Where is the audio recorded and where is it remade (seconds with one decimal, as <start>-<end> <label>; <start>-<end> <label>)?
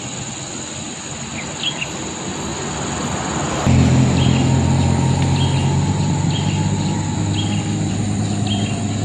0.0-9.0 recorded